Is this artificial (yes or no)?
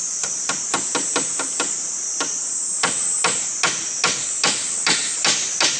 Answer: no